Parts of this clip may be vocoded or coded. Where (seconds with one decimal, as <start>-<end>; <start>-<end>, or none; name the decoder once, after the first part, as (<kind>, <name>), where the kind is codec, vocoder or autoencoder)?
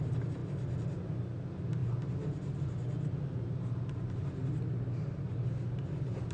none